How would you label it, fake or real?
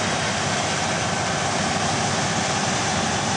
real